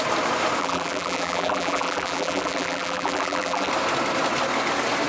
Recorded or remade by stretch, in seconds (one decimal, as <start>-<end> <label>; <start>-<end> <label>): 0.0-0.6 recorded; 0.6-3.7 remade; 3.7-5.1 recorded